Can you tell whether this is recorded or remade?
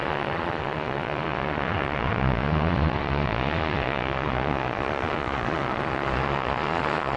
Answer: remade